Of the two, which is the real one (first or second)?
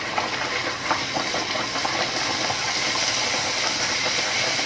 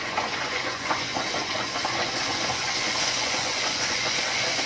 first